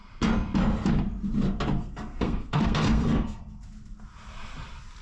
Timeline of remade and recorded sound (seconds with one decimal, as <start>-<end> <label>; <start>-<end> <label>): 0.0-1.8 recorded; 1.8-3.4 remade; 3.4-5.0 recorded